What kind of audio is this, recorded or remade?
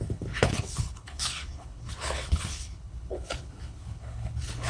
remade